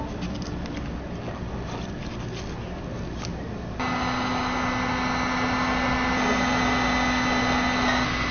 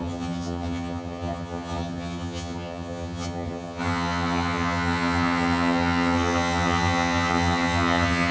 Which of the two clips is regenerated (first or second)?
second